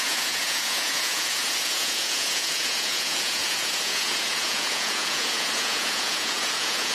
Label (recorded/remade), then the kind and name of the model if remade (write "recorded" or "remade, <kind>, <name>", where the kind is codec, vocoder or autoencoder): remade, vocoder, Vocos